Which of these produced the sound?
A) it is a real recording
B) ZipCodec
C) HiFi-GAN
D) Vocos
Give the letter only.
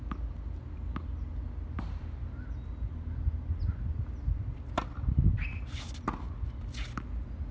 A